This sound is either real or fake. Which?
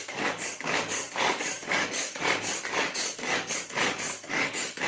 fake